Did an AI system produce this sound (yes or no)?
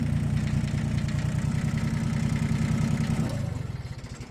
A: no